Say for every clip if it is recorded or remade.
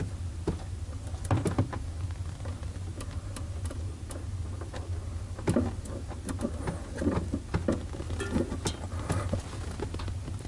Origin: recorded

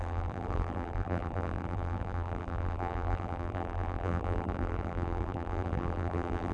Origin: remade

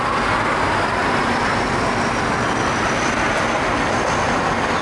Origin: recorded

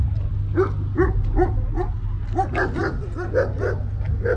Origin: recorded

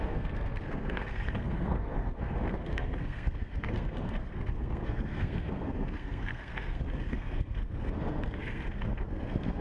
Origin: remade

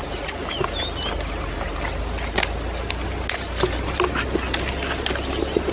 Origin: recorded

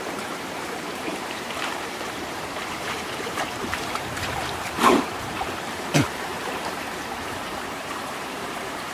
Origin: remade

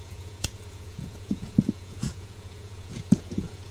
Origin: remade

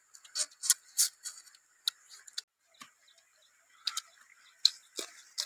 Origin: recorded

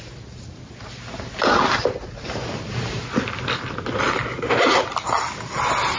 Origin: recorded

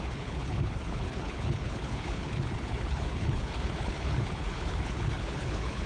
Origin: remade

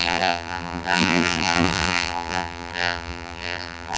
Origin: remade